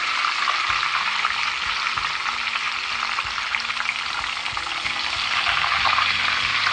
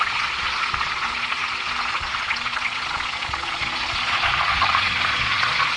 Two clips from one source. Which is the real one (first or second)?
first